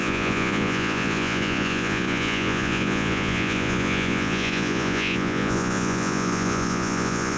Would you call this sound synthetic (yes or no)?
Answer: yes